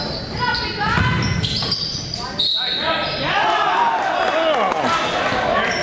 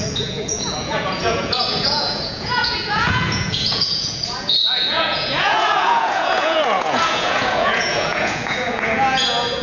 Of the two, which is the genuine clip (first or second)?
first